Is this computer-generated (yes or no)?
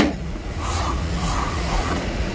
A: yes